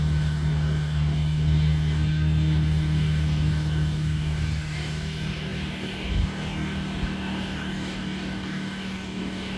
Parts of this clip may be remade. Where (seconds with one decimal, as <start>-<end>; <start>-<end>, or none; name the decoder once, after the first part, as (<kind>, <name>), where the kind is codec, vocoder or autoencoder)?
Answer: 0.0-9.6 (codec, DAC)